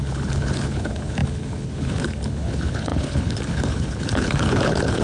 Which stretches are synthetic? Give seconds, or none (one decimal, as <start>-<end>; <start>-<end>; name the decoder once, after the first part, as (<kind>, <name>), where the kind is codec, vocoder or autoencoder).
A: 0.0-5.0 (codec, HILCodec)

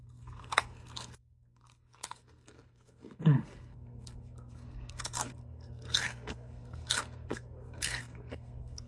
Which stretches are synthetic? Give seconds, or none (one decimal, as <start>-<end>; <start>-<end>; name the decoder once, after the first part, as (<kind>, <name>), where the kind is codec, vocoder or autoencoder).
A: 0.0-8.9 (codec, SNAC)

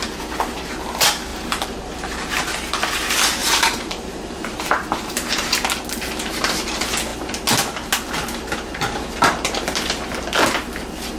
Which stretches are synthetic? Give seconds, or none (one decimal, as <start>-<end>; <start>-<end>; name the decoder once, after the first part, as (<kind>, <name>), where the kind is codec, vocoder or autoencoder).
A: 1.3-2.5 (vocoder, BigVGAN v2); 3.4-5.5

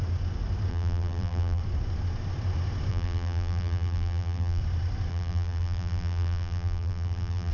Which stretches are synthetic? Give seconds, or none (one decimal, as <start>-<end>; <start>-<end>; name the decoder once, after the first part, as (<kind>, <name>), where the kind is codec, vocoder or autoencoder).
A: 0.7-1.6 (vocoder, BigVGAN v2); 2.9-4.6; 5.1-7.5

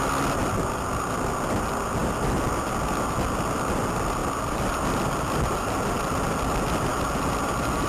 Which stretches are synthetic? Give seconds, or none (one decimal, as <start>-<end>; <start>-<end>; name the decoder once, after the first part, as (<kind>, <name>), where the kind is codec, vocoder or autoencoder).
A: 2.0-2.6 (vocoder, BigVGAN v2); 4.2-5.4

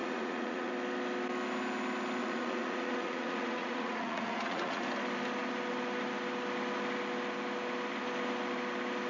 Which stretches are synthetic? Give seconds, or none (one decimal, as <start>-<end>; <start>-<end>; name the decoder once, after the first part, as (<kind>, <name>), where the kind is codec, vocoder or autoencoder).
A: 0.0-0.7 (vocoder, Vocos); 2.2-4.8